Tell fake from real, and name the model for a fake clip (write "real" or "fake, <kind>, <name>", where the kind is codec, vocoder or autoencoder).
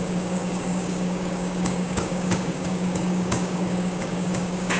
fake, codec, DAC